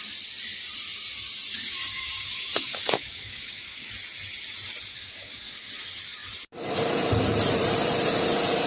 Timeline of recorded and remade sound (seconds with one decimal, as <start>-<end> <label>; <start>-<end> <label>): 0.0-1.6 recorded; 1.6-3.9 remade; 3.9-4.9 recorded; 4.9-5.7 remade; 5.7-8.7 recorded